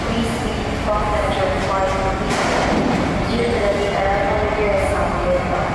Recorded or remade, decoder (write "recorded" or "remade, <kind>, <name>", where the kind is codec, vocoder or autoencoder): recorded